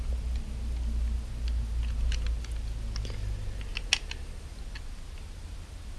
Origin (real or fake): real